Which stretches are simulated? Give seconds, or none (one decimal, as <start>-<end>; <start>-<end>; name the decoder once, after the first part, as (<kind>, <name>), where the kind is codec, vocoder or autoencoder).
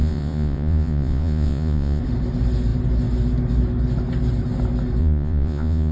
0.0-2.0 (vocoder, Vocos); 5.0-5.9